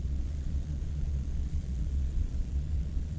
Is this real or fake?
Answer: fake